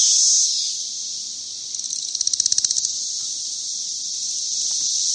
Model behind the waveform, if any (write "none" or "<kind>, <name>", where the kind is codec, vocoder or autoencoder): none